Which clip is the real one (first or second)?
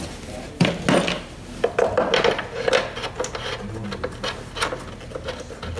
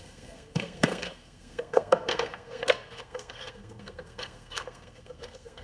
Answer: first